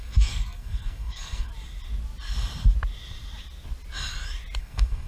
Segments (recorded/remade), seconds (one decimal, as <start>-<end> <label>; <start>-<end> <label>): 0.0-1.5 remade; 1.5-4.6 recorded; 4.6-5.1 remade

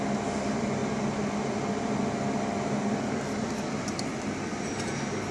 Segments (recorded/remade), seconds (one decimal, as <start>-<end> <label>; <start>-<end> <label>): 0.0-5.3 recorded

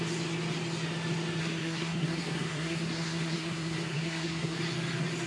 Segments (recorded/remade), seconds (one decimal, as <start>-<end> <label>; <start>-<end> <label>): 0.0-1.4 recorded; 1.4-4.6 remade; 4.6-5.3 recorded

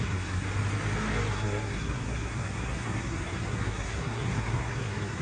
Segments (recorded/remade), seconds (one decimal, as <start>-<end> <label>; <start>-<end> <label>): 0.0-0.5 remade; 0.5-1.3 recorded; 1.3-5.2 remade

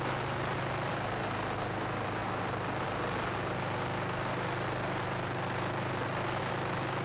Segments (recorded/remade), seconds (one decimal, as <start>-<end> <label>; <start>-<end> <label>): 0.0-7.0 recorded

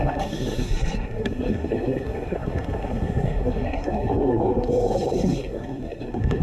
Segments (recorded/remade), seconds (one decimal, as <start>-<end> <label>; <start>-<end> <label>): 0.0-6.4 remade

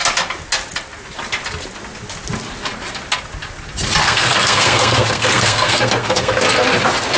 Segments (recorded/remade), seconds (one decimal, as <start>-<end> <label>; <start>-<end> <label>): 0.0-4.0 recorded; 4.0-6.4 remade; 6.4-7.2 recorded

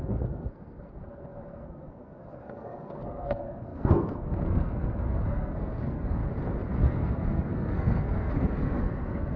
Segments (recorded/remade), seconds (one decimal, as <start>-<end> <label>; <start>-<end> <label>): 0.0-6.2 remade; 6.2-6.8 recorded; 6.8-9.4 remade